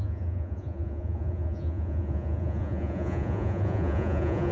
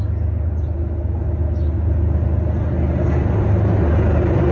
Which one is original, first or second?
second